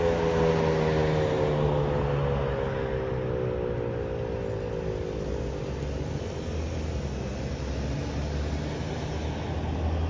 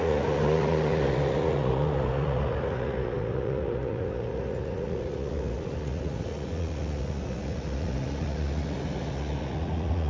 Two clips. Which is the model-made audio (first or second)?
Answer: second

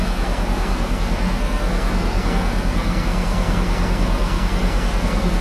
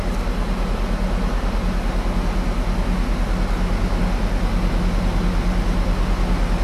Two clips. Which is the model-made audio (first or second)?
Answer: first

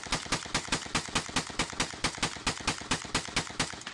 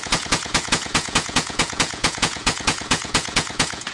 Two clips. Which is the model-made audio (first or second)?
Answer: second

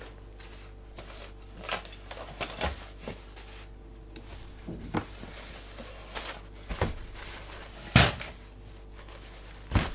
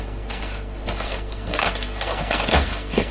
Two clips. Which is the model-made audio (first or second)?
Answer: second